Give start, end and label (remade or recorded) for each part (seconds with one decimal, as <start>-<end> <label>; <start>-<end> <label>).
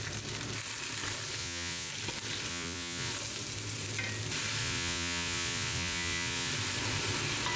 0.0-1.4 recorded; 1.4-1.9 remade; 1.9-2.5 recorded; 2.5-3.1 remade; 3.1-4.6 recorded; 4.6-6.5 remade; 6.5-7.6 recorded